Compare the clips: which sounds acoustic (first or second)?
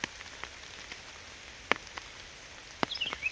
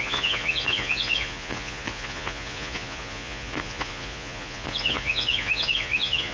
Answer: first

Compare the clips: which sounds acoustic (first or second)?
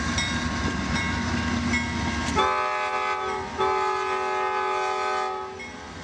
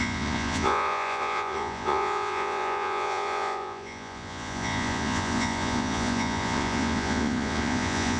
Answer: first